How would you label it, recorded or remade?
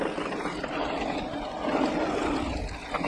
recorded